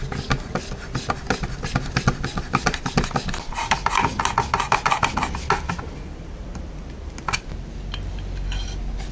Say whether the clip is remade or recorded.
recorded